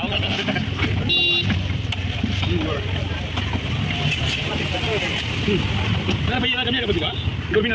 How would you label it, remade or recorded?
recorded